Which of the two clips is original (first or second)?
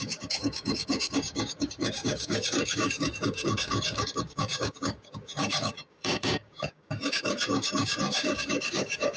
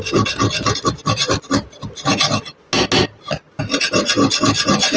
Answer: second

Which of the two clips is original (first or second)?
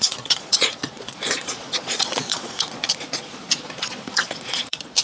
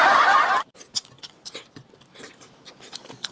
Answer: second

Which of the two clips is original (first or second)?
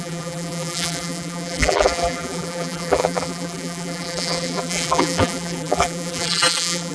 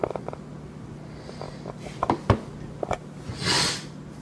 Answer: second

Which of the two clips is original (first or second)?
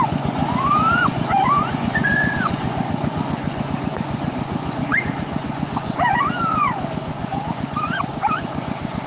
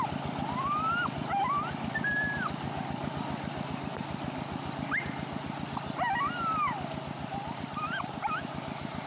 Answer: second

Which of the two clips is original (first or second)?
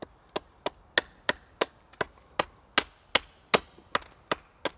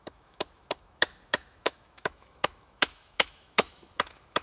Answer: first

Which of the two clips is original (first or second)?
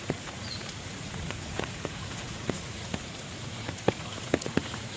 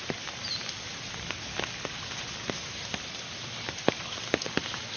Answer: second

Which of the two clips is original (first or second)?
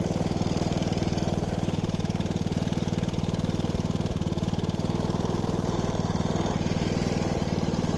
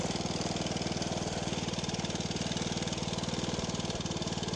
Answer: second